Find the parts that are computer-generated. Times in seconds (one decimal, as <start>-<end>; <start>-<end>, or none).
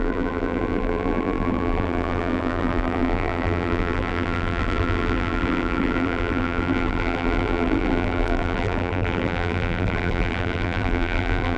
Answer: 0.0-11.6